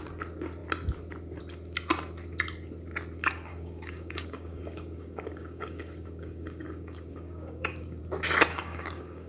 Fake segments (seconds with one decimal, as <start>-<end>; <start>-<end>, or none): 3.5-8.0; 8.5-9.3